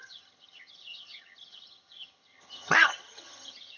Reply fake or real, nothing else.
fake